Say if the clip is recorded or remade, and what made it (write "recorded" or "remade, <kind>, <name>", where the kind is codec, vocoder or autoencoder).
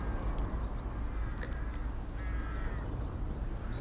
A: recorded